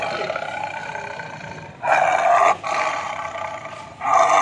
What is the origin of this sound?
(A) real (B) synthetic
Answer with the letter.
A